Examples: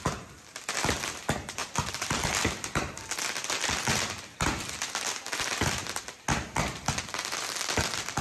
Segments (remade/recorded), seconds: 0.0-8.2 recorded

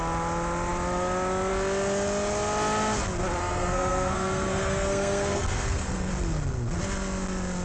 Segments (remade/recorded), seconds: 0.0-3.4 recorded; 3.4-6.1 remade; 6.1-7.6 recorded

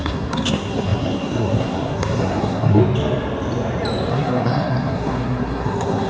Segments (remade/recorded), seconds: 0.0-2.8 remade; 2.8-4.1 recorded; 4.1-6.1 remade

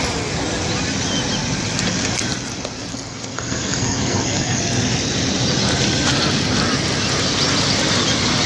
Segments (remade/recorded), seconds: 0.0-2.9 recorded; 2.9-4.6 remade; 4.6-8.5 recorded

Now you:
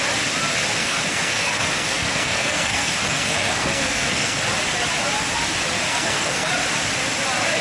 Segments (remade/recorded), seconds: 0.0-0.8 recorded; 0.8-4.4 remade; 4.4-5.9 recorded; 5.9-6.5 remade; 6.5-7.6 recorded